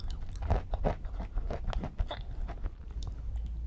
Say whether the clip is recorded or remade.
recorded